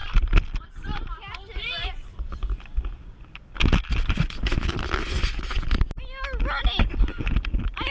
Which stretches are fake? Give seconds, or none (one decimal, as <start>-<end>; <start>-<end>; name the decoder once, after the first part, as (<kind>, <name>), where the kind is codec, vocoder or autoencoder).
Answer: none